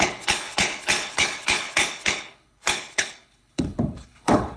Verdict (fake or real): fake